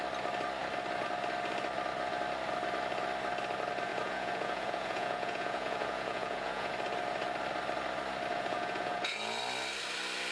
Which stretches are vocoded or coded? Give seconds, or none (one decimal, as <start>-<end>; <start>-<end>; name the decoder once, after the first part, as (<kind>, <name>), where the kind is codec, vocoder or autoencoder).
3.9-6.7 (vocoder, Vocos); 8.3-9.4